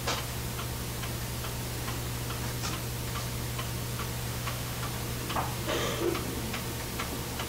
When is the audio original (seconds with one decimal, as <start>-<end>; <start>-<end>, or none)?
0.0-4.3; 4.8-7.5